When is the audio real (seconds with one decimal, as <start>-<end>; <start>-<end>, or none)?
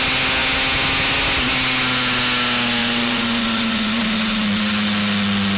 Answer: 0.0-2.8; 4.0-5.6